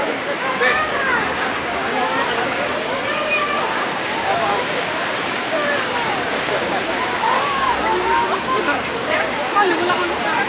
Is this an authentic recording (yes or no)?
no